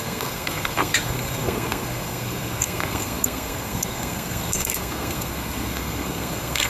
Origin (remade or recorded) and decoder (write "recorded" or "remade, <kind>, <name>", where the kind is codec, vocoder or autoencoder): remade, codec, SNAC